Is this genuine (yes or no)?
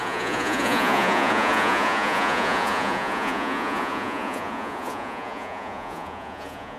no